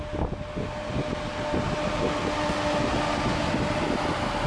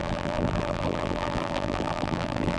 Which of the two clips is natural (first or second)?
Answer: first